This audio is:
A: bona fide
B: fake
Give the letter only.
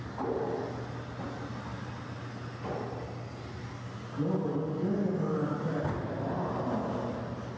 A